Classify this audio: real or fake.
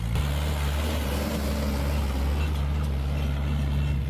real